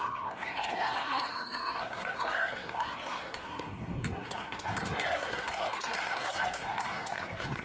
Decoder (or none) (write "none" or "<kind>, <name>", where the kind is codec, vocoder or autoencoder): codec, SNAC